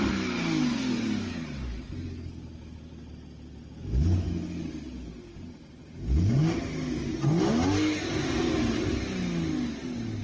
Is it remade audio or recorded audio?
recorded